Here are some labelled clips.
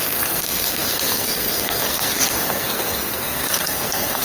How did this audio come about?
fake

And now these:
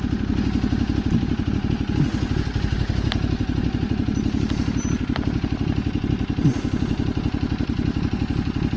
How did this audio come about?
real